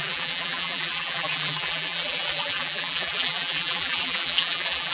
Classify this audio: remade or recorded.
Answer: remade